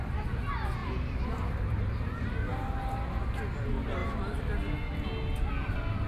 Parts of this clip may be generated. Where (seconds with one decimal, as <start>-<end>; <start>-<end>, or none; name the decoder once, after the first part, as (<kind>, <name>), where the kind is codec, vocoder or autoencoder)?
0.8-2.9 (vocoder, BigVGAN v2)